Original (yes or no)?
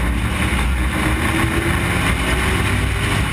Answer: yes